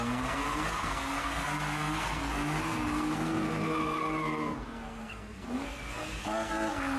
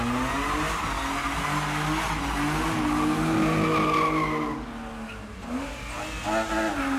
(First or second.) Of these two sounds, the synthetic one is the first